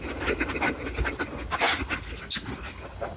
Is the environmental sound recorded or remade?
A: recorded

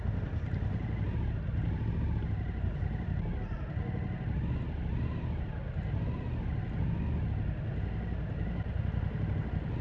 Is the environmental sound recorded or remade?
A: recorded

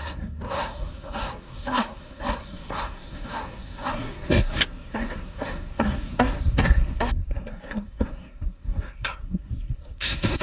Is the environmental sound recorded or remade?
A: remade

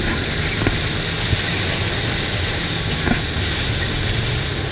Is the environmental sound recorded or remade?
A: recorded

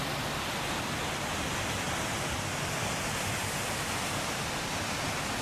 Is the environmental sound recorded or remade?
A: recorded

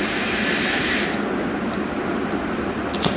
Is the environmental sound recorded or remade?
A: recorded